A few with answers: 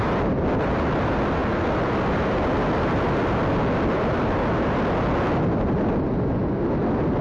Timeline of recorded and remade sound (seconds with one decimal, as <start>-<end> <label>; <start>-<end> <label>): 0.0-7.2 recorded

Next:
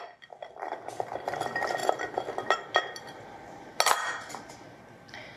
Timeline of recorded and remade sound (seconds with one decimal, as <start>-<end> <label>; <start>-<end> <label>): 0.0-5.4 recorded

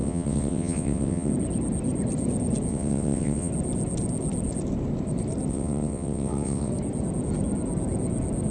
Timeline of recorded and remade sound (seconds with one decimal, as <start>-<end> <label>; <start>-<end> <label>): 0.0-1.3 remade; 1.3-2.7 recorded; 2.7-3.5 remade; 3.5-5.5 recorded; 5.5-6.7 remade; 6.7-8.5 recorded